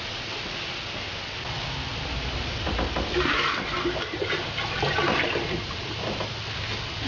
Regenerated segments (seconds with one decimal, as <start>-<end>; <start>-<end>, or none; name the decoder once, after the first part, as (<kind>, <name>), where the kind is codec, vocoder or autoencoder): 1.9-6.2 (vocoder, BigVGAN v2)